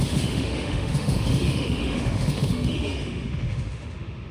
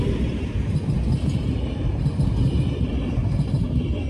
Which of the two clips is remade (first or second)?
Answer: first